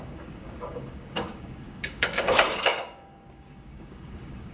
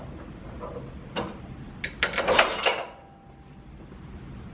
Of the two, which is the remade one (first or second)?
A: first